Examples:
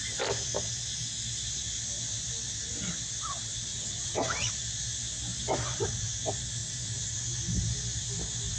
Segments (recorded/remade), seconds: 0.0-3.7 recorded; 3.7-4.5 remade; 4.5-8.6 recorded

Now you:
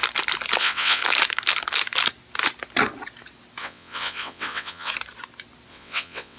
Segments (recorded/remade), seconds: 0.0-0.6 recorded; 0.6-1.0 remade; 1.0-3.6 recorded; 3.6-4.9 remade; 4.9-5.7 recorded; 5.7-6.4 remade

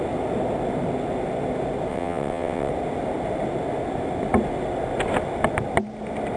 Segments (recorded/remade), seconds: 0.0-1.9 recorded; 1.9-2.7 remade; 2.7-6.4 recorded

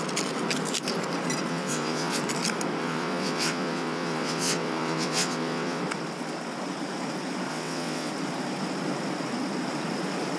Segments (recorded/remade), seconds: 0.0-1.5 recorded; 1.5-2.2 remade; 2.2-2.8 recorded; 2.8-5.8 remade; 5.8-7.5 recorded; 7.5-8.1 remade; 8.1-10.4 recorded

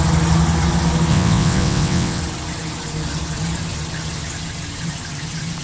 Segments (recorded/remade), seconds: 0.0-1.1 recorded; 1.1-2.2 remade; 2.2-5.6 recorded